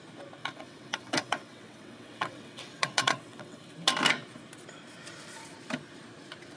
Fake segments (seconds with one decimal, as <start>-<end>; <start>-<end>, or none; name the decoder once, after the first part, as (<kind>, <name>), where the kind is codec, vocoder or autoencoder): 0.4-3.6 (vocoder, WaveNeXt)